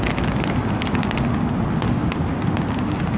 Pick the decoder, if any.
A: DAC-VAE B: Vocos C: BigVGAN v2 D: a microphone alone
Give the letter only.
D